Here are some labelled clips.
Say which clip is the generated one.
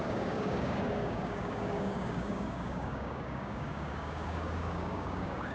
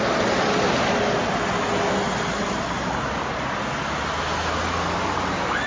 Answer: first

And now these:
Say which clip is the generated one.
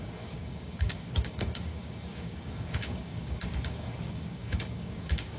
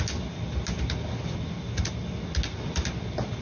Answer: first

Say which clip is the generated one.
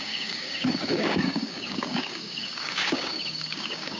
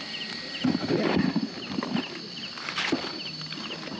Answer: first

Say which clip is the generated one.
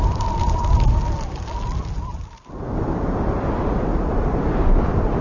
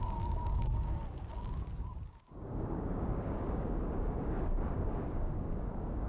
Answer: second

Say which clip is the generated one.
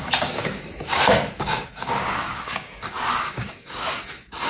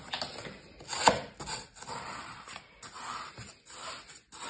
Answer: first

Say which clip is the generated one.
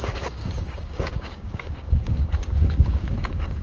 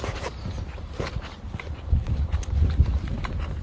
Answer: first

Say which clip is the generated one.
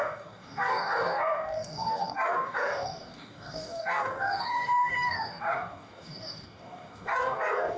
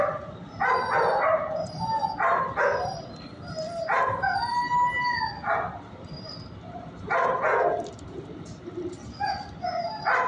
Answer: first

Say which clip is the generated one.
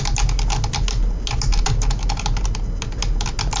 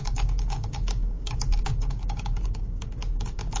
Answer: second